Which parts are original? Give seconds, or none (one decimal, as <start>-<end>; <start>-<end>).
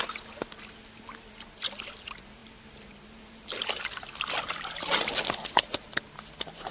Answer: 0.0-6.7